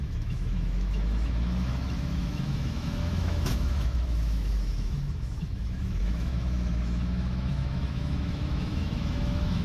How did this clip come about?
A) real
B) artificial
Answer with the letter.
B